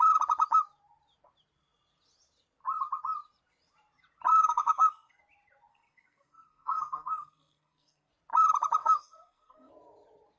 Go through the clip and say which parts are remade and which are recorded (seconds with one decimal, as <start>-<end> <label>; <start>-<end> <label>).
0.0-4.3 recorded; 4.3-5.2 remade; 5.2-5.7 recorded; 5.7-8.1 remade; 8.1-8.8 recorded; 8.8-9.7 remade; 9.7-10.4 recorded

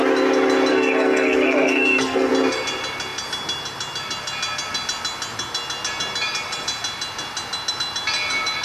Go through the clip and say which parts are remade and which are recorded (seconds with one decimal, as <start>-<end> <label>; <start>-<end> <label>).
0.0-0.7 recorded; 0.7-2.3 remade; 2.3-8.6 recorded

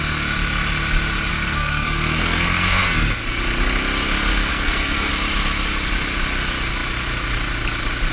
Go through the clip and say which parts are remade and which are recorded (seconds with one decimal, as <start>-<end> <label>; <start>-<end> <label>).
0.0-1.3 recorded; 1.3-3.4 remade; 3.4-4.5 recorded; 4.5-5.1 remade; 5.1-8.1 recorded